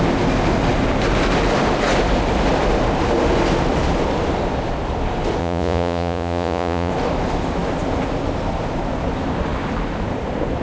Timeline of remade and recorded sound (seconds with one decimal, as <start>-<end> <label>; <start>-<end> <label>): 0.0-5.4 recorded; 5.4-6.9 remade; 6.9-10.6 recorded